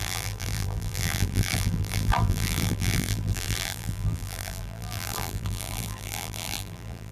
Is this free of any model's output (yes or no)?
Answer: no